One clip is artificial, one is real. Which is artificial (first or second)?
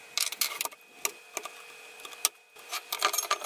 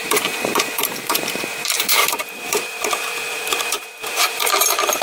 second